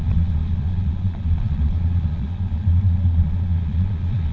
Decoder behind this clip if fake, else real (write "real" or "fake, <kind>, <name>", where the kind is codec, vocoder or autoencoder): fake, vocoder, Vocos